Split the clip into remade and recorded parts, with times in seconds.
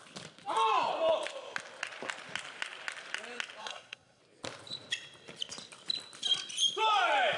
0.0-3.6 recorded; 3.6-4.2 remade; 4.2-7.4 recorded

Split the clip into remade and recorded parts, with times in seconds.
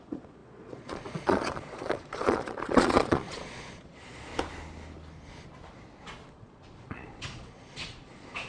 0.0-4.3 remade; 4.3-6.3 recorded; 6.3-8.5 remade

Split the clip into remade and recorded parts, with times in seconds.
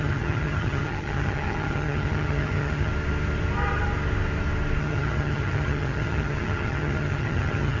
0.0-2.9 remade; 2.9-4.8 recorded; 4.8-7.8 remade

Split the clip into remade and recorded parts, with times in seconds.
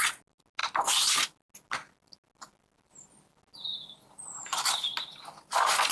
0.0-5.9 recorded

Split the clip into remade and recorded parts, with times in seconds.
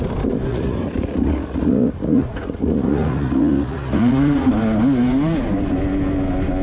0.0-0.5 recorded; 0.5-4.5 remade; 4.5-6.6 recorded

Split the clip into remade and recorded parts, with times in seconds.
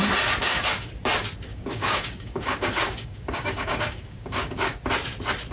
0.0-0.4 recorded; 0.4-0.9 remade; 0.9-1.5 recorded; 1.5-4.8 remade; 4.8-5.5 recorded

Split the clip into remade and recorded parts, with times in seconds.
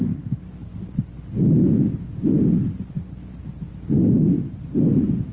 0.0-5.3 recorded